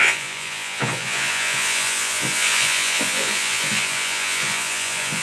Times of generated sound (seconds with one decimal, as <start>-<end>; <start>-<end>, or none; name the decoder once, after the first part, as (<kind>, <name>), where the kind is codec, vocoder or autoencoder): 0.0-5.2 (vocoder, Vocos)